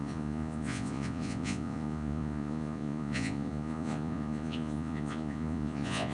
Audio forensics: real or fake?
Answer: fake